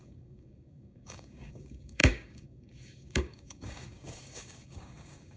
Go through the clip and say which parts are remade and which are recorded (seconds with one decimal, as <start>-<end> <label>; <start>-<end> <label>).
0.0-5.4 remade